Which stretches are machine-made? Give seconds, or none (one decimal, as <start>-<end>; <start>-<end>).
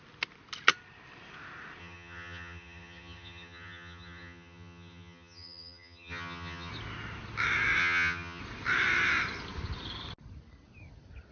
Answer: 1.8-6.7; 7.8-8.4